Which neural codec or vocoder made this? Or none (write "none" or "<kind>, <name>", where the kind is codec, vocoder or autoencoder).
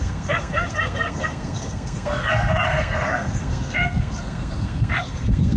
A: codec, SNAC